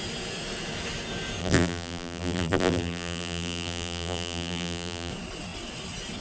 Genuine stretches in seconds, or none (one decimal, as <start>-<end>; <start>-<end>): 0.0-1.4; 5.1-6.2